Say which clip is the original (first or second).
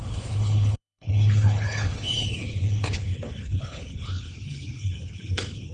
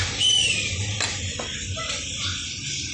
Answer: second